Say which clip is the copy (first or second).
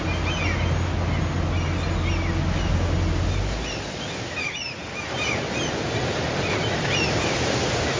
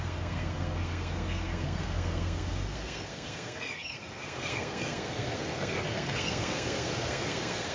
second